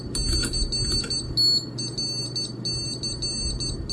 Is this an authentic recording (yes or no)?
yes